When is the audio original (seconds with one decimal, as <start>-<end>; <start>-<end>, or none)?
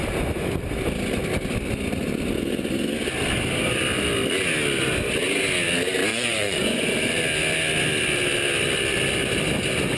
0.0-6.1; 6.9-10.0